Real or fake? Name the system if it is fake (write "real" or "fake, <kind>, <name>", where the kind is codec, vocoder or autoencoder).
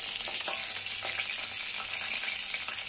real